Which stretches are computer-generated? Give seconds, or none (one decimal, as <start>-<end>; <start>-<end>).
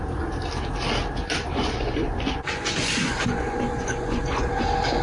1.5-4.5